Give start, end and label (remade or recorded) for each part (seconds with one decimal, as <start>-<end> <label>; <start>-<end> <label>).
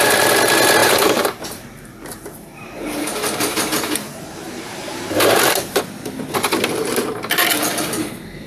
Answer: 0.0-0.8 recorded; 0.8-5.8 remade; 5.8-8.5 recorded